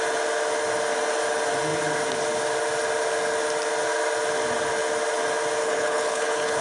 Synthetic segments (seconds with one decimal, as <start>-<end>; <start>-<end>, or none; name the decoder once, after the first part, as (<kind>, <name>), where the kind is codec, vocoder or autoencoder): 5.6-6.6 (codec, HILCodec)